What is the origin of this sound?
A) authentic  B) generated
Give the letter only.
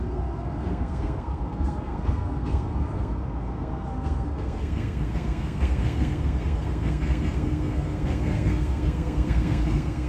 B